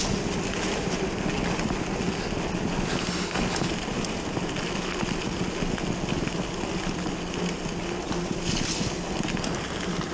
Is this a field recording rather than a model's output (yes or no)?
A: yes